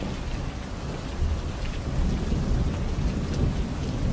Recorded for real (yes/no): yes